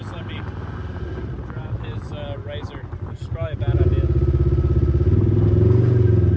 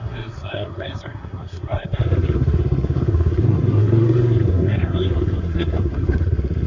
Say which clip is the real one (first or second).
first